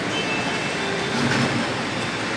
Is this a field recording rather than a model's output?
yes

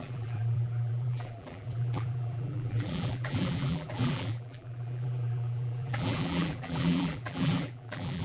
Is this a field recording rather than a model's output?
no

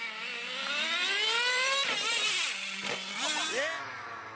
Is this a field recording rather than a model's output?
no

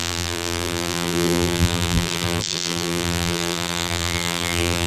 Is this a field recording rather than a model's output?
no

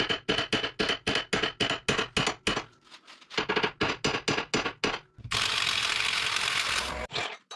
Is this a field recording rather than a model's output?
yes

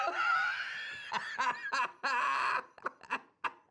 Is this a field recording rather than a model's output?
yes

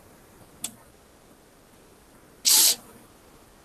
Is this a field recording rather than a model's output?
yes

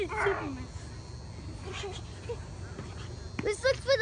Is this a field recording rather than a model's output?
yes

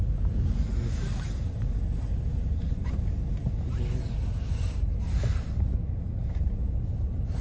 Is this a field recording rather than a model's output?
yes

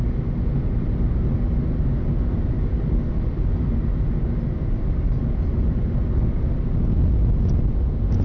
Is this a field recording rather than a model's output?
yes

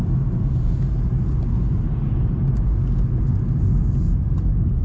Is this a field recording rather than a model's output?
yes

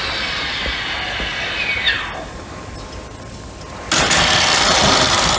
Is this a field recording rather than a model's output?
yes